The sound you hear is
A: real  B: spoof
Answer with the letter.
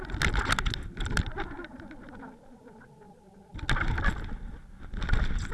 A